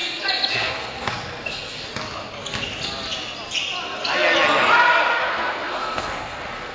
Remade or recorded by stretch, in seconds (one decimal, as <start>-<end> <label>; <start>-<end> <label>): 0.0-0.5 recorded; 0.5-1.9 remade; 1.9-5.1 recorded; 5.1-6.7 remade